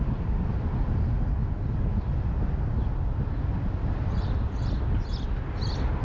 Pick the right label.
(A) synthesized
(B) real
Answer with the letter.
B